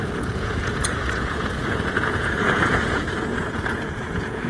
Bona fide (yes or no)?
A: no